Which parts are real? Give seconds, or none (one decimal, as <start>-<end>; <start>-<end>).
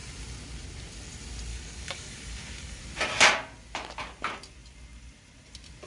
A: 0.0-1.5; 2.8-5.9